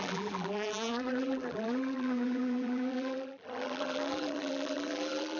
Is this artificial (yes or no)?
yes